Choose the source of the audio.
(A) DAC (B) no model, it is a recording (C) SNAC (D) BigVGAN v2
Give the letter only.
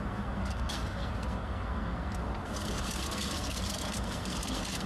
C